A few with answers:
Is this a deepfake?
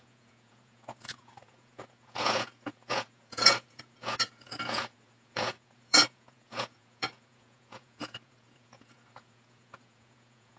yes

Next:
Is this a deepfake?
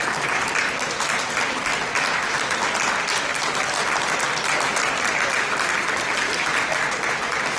no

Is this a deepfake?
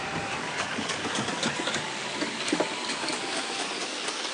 yes